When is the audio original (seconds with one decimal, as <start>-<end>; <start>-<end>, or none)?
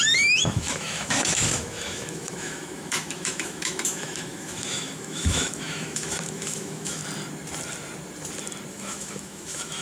7.0-8.7